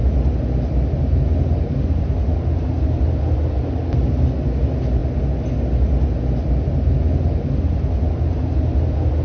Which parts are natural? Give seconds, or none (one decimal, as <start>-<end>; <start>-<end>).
0.0-9.2